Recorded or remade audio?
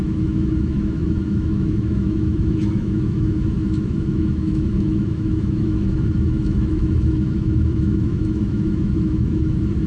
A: remade